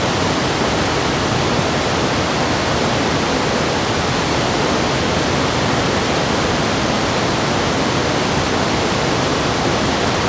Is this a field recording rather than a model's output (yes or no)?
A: yes